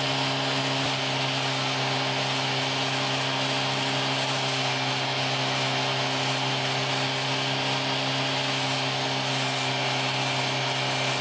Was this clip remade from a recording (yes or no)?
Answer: no